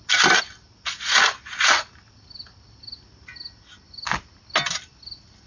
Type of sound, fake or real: real